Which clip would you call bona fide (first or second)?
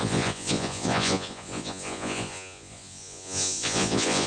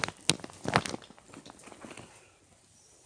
second